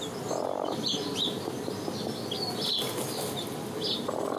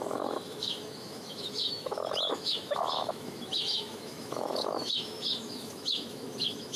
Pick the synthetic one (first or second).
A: second